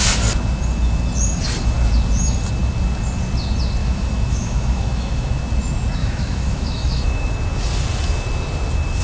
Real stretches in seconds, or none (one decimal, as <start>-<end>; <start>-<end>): 0.0-3.8; 5.3-6.0; 7.3-9.0